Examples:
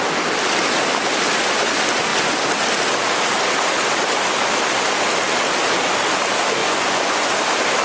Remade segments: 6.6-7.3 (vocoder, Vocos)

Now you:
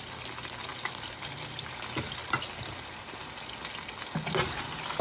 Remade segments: 0.7-1.6 (vocoder, BigVGAN v2); 2.2-3.0

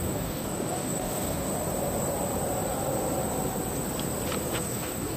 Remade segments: 0.0-1.5 (codec, DAC); 4.5-5.2

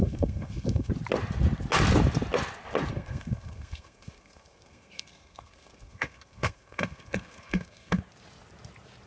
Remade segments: 0.0-0.9 (codec, SNAC); 2.9-8.0